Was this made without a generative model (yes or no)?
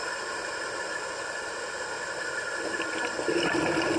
yes